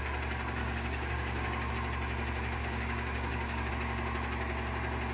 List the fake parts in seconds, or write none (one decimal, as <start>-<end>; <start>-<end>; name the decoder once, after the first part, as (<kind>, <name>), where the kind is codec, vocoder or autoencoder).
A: 0.6-1.7 (codec, DAC); 2.6-3.7